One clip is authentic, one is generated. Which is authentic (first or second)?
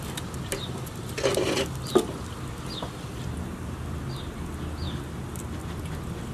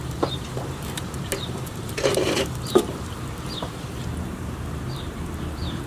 first